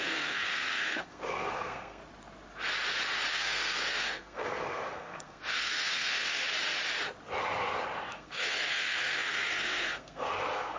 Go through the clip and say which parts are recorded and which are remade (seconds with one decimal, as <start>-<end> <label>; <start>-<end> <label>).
0.0-2.0 remade; 2.0-3.3 recorded; 3.3-6.4 remade; 6.4-8.0 recorded; 8.0-10.8 remade